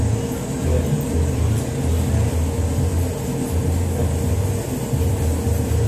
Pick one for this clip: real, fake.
real